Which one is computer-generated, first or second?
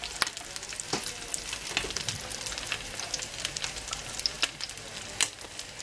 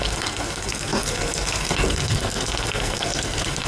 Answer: second